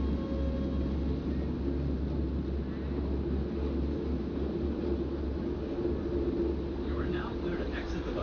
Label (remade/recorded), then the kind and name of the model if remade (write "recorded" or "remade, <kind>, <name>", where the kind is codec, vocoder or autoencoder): recorded